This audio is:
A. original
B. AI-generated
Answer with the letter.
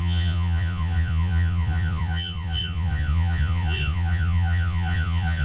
B